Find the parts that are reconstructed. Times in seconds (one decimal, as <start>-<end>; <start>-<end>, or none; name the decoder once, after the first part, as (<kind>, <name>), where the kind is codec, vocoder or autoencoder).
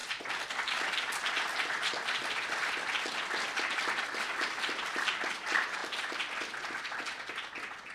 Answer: none